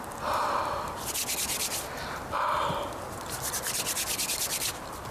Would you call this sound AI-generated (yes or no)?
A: no